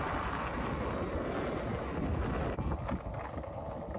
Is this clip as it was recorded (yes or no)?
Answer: yes